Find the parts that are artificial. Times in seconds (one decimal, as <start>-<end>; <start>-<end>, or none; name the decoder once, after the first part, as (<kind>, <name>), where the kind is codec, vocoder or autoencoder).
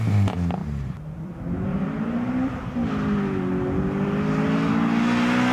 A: 0.6-1.4 (vocoder, BigVGAN v2)